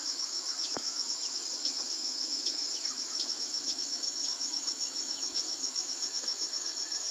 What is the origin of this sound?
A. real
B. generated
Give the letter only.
B